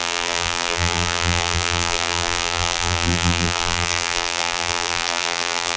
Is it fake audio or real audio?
fake